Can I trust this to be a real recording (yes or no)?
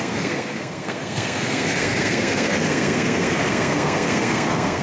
no